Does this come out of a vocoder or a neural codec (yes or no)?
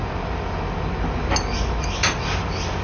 no